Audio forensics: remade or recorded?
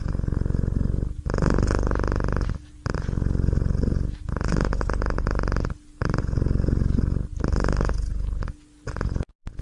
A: recorded